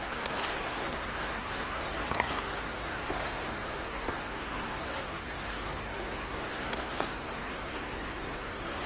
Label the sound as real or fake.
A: fake